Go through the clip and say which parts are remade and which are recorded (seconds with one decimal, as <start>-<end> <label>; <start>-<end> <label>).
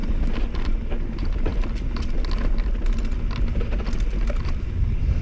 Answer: 0.0-5.2 recorded